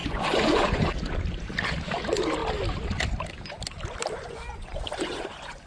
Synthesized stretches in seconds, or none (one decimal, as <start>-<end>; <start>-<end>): 0.0-0.9; 4.2-5.7